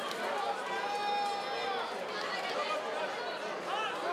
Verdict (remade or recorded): recorded